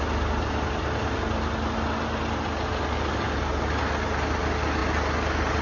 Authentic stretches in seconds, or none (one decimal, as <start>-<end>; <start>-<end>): 0.0-5.6